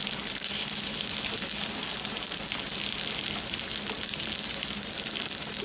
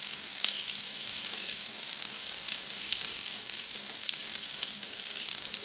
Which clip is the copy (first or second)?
second